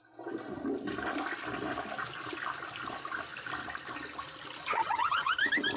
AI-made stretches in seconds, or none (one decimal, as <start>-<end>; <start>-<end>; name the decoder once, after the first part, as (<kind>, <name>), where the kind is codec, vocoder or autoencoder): 4.7-5.3 (vocoder, HiFi-GAN)